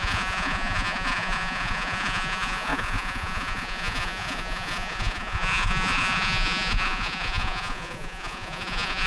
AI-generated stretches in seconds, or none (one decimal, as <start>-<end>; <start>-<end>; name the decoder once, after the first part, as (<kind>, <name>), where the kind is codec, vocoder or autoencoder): 0.0-9.1 (vocoder, Vocos)